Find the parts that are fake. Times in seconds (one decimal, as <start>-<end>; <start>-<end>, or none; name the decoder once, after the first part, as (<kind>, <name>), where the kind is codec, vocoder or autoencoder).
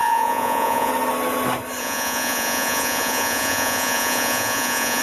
0.0-0.9 (vocoder, Vocos); 1.8-5.0